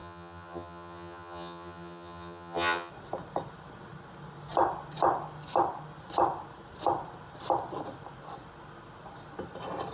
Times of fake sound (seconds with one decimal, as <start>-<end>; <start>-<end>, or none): 0.0-2.9